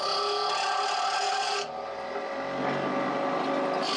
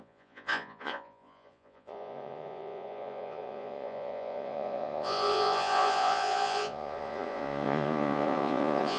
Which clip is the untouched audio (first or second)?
first